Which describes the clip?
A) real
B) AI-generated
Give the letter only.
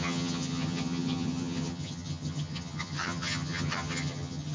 B